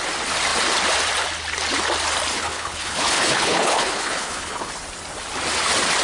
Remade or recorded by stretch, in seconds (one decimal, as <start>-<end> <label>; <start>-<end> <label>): 0.0-2.3 recorded; 2.3-4.7 remade; 4.7-6.0 recorded